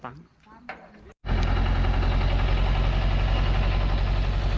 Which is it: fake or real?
real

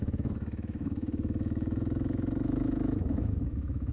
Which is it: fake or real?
fake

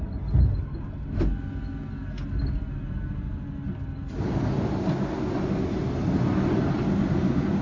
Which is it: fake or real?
real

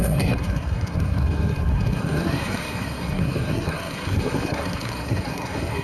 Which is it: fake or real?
fake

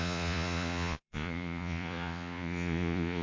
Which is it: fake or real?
fake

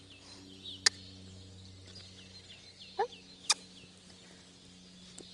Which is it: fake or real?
real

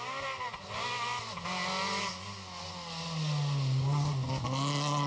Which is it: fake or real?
real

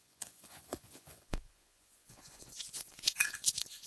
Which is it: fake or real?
fake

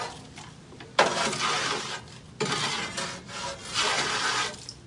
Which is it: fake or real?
real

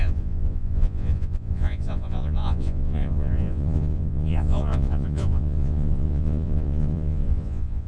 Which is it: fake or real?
fake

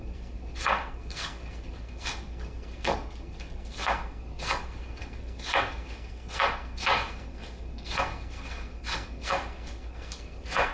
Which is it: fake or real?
fake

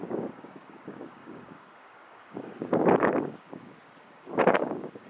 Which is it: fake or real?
fake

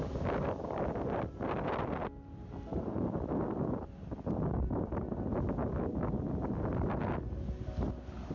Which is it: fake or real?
real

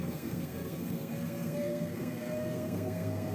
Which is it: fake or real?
fake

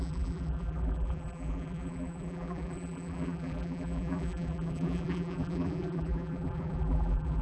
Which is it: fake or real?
fake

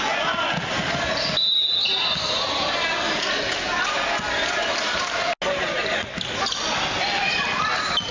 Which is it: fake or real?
real